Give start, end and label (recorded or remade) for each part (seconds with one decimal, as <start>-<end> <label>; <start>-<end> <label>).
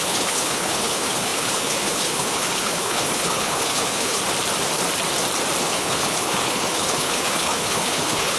0.0-4.2 remade; 4.2-5.6 recorded; 5.6-8.4 remade